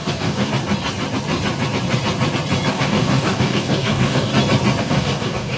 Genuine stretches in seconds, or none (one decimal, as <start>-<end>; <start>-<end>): 0.5-2.7; 4.3-4.8